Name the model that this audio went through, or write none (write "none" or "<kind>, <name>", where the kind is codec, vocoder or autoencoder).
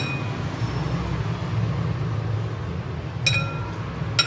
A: none